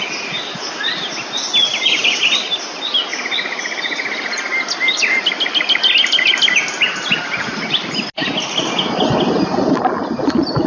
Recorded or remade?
recorded